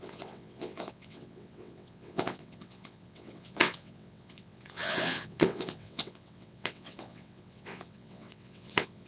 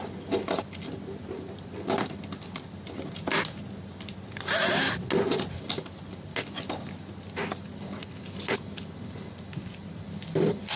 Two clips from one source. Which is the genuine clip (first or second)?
second